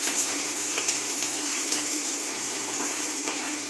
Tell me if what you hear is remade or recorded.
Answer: remade